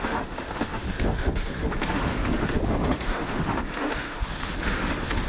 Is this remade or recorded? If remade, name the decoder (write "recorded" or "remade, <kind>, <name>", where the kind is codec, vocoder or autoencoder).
remade, autoencoder, DAC-VAE